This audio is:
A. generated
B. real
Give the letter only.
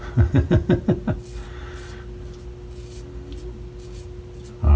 B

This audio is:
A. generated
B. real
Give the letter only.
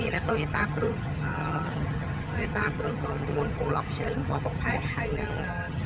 A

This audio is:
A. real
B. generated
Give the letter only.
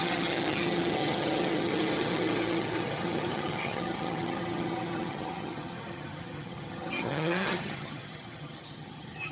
B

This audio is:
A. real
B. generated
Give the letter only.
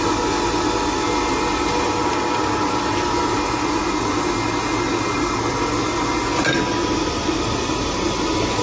A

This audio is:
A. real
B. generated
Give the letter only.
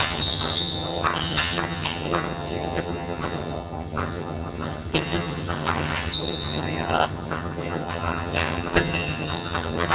B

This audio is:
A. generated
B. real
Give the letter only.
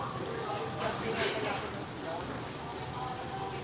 B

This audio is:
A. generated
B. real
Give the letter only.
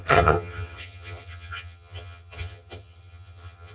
A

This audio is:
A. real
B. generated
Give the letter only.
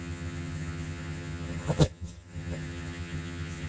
B